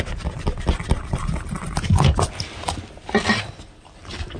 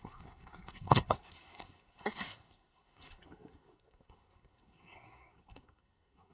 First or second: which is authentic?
first